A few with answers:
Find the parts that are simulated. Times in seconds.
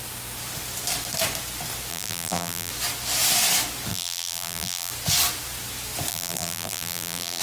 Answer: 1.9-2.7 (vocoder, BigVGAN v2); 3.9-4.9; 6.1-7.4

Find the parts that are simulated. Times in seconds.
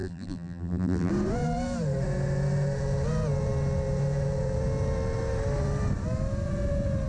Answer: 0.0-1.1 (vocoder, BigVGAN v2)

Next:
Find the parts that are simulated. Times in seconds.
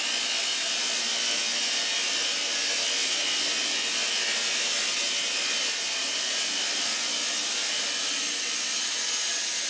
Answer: 3.0-4.1 (vocoder, BigVGAN v2); 6.0-8.2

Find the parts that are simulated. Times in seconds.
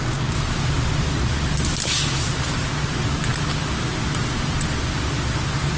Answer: none